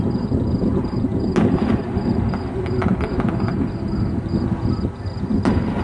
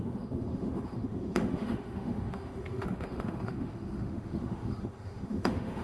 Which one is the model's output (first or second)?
second